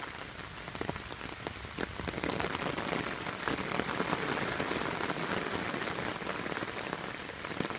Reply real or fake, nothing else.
real